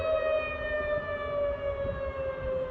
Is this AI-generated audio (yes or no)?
no